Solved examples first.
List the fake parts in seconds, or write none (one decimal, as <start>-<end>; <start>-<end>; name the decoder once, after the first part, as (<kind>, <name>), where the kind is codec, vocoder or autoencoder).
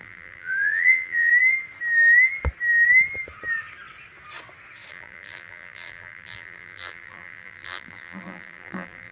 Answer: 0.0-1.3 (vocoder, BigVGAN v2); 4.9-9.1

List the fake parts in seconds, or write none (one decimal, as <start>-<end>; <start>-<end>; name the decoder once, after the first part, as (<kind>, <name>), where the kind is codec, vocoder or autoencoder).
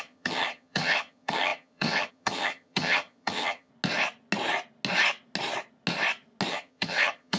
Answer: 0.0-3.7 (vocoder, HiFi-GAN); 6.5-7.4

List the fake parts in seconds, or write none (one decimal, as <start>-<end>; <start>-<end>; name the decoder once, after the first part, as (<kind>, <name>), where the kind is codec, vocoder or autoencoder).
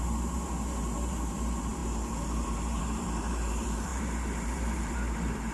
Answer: 0.0-5.5 (vocoder, BigVGAN v2)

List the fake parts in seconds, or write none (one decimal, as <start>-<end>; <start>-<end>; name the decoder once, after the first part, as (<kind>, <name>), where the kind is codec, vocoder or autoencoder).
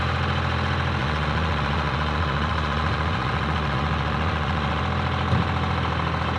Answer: 1.0-4.8 (vocoder, Vocos)